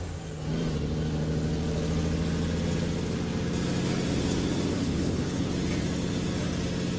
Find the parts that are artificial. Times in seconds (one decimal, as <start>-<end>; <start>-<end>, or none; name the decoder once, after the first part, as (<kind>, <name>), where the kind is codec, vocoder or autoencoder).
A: 4.7-5.5 (codec, HILCodec)